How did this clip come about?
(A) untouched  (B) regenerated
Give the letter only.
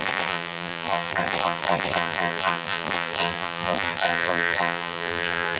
B